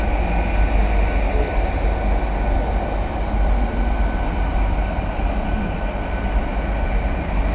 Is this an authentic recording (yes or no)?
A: yes